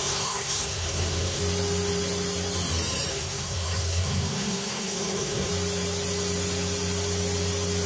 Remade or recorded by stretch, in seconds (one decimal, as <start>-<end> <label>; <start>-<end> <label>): 0.0-1.4 remade; 1.4-3.1 recorded; 3.1-5.5 remade; 5.5-7.9 recorded